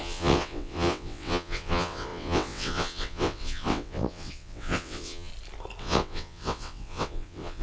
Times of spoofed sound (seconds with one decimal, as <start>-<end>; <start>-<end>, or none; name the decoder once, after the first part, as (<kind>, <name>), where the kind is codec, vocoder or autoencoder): 0.0-5.3 (vocoder, WaveNeXt); 5.8-7.6